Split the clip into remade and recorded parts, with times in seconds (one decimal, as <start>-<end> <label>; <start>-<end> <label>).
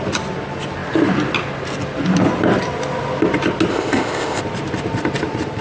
0.0-3.7 recorded; 3.7-4.4 remade; 4.4-5.6 recorded